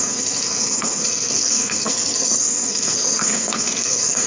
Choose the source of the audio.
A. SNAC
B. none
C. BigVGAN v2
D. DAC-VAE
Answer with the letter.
A